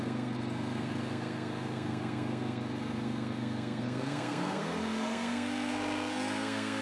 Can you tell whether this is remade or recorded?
remade